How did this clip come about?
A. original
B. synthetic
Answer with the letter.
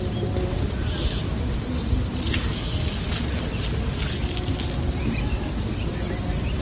A